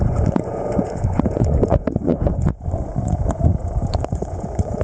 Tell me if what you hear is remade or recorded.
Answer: remade